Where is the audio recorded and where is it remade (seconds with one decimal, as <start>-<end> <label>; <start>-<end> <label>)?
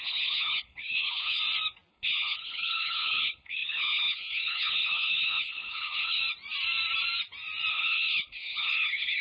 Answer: 0.0-1.4 remade; 1.4-1.9 recorded; 1.9-6.2 remade; 6.2-7.7 recorded; 7.7-9.2 remade